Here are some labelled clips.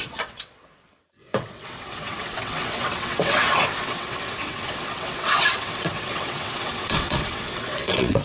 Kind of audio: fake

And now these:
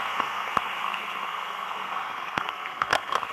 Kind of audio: fake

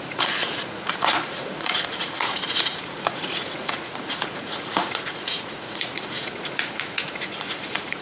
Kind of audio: fake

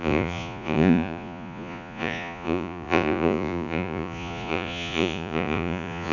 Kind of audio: fake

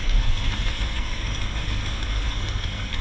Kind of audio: fake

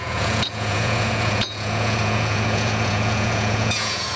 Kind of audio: fake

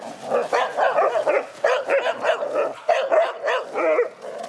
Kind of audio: real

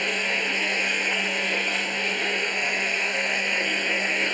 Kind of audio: fake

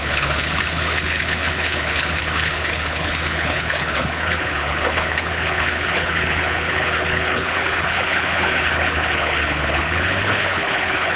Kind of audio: fake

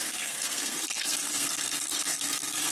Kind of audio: fake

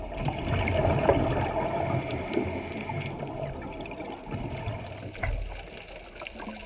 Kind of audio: real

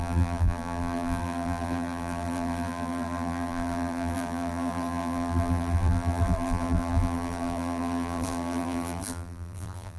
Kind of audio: fake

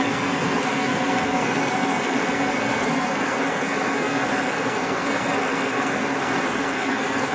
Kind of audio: fake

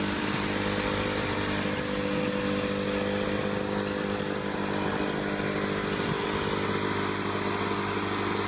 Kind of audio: real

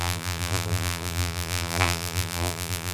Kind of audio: fake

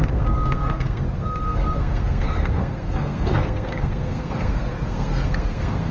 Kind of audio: fake